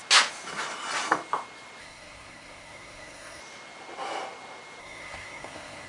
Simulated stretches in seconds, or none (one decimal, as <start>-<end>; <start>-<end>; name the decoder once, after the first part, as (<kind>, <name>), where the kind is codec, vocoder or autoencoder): 1.8-3.4 (codec, SNAC); 4.8-5.9